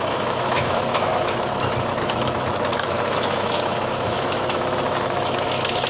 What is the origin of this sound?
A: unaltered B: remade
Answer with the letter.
B